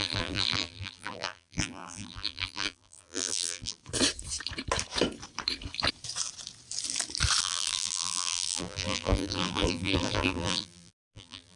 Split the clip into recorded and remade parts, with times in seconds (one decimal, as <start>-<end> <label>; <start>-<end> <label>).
0.0-3.8 remade; 3.8-7.4 recorded; 7.4-11.6 remade